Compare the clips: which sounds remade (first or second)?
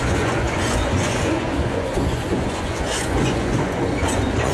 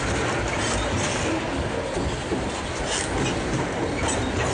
first